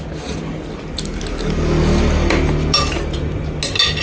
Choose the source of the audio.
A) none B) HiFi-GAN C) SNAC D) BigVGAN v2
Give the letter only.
A